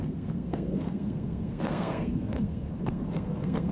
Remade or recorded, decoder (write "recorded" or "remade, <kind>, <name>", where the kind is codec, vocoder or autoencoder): remade, codec, SNAC